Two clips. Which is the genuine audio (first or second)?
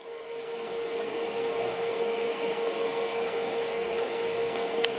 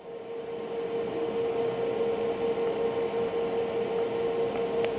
second